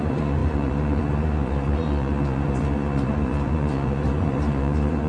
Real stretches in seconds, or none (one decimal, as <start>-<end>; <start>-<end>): none